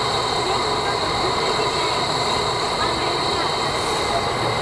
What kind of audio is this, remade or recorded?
recorded